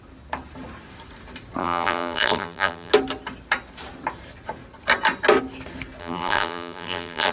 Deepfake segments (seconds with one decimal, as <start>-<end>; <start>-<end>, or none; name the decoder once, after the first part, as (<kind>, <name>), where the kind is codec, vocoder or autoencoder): 1.6-2.9 (vocoder, BigVGAN v2); 6.0-7.3